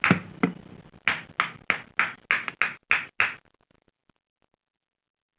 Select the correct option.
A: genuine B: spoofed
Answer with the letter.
A